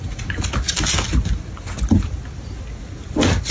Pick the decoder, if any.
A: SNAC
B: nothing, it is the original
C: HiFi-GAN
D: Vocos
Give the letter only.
B